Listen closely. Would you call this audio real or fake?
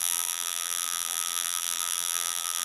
fake